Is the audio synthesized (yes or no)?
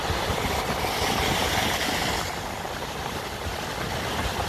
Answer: no